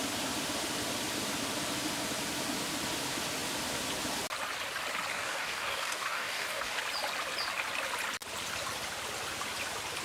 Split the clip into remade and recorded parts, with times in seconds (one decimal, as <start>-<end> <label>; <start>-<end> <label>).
0.0-5.1 recorded; 5.1-6.8 remade; 6.8-10.0 recorded